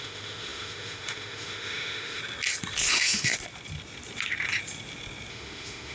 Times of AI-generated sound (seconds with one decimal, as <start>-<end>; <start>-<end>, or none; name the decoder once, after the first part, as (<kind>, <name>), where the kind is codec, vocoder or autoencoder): 0.0-2.2 (autoencoder, DAC-VAE); 2.9-3.3; 5.3-5.9